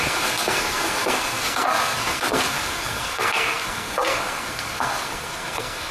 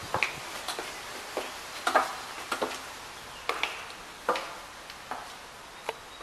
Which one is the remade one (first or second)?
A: first